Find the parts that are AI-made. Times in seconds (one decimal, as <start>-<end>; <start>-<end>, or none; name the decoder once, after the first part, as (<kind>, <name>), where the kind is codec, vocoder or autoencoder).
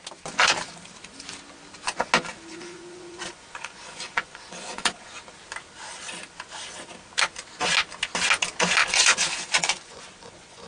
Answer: 2.5-5.2 (vocoder, Vocos); 8.8-10.7